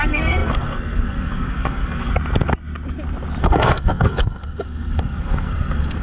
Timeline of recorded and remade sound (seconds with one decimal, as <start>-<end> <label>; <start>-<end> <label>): 0.0-2.1 remade; 2.1-3.4 recorded; 3.4-6.0 remade